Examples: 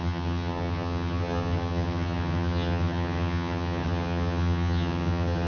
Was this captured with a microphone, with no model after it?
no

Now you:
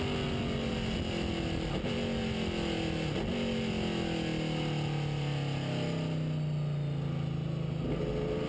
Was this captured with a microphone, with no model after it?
yes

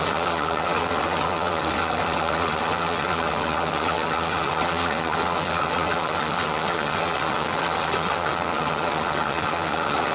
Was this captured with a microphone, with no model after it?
no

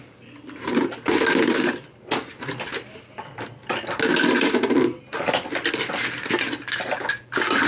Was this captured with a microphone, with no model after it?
yes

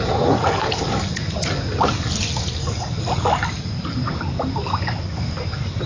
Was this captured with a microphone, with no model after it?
yes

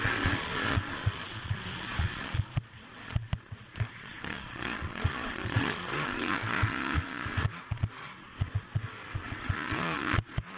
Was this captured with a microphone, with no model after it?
no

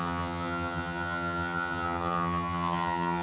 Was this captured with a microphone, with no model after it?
no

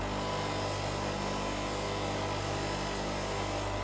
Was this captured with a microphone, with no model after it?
yes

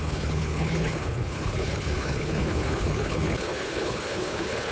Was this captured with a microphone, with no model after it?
no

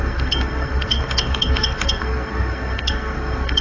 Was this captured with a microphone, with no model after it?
no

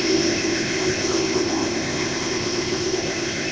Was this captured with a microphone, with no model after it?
no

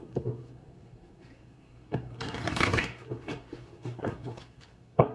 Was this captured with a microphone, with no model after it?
no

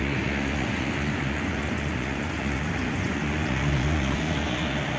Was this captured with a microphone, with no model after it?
no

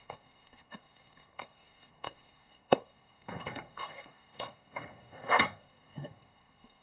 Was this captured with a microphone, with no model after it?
no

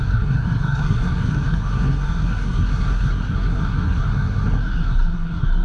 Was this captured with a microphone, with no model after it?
no